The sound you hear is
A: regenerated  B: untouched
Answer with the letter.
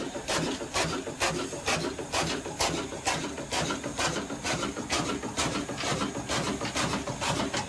B